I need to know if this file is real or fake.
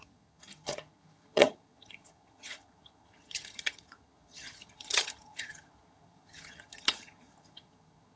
fake